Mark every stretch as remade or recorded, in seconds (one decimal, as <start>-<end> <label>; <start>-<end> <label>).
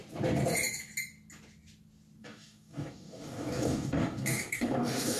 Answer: 0.0-2.2 recorded; 2.2-5.2 remade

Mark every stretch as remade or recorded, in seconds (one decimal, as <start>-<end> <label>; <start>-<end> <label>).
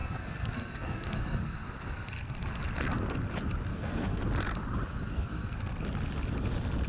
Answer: 0.0-2.6 remade; 2.6-3.7 recorded; 3.7-4.2 remade; 4.2-5.1 recorded; 5.1-5.8 remade; 5.8-6.9 recorded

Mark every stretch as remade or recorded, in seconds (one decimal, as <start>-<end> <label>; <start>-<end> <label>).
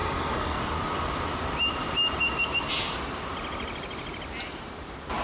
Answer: 0.0-0.6 remade; 0.6-5.2 recorded